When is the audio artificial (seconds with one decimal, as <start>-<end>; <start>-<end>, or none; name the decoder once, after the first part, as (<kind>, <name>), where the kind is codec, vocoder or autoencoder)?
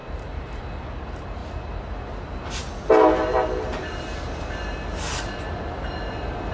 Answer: 0.0-0.6 (vocoder, BigVGAN v2)